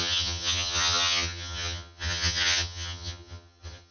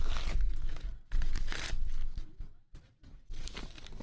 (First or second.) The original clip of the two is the second